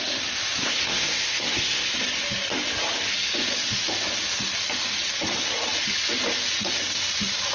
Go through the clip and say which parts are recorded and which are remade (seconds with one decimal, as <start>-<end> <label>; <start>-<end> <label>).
0.0-0.6 recorded; 0.6-1.9 remade; 1.9-7.5 recorded